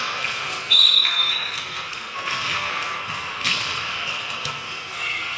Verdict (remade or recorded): remade